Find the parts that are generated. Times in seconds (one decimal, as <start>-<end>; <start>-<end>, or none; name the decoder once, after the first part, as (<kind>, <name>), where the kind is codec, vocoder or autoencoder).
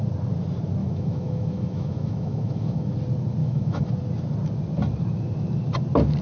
0.8-2.9 (autoencoder, DAC-VAE); 3.4-3.9